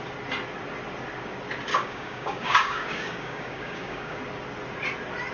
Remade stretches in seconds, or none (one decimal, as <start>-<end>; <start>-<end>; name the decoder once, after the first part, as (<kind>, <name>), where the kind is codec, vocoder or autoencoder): 1.7-4.2 (codec, DAC)